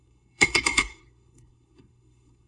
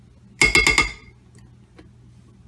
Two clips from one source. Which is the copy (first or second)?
first